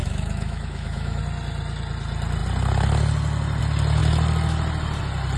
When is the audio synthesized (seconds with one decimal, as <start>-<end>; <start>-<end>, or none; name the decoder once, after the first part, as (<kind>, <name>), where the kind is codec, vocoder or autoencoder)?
0.0-1.2 (autoencoder, DAC-VAE)